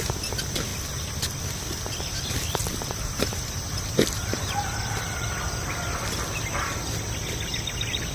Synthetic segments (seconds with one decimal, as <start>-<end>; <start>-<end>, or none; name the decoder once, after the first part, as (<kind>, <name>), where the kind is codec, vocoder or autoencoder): 0.7-1.4 (vocoder, BigVGAN v2); 2.6-5.7

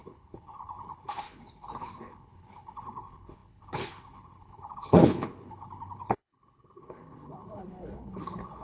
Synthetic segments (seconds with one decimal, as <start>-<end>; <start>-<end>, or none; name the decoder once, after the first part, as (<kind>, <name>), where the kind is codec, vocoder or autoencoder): 0.0-8.6 (codec, HILCodec)